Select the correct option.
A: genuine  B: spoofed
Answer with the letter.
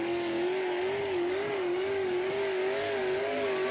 B